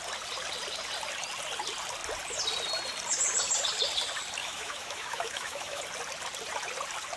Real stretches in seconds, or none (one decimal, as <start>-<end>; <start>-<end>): 0.0-4.4; 5.8-7.2